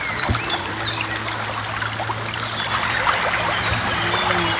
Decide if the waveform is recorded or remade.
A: recorded